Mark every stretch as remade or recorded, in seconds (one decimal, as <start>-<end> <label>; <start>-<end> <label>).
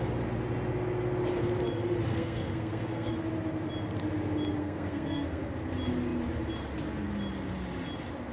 0.0-2.1 recorded; 2.1-3.1 remade; 3.1-4.6 recorded; 4.6-5.5 remade; 5.5-8.3 recorded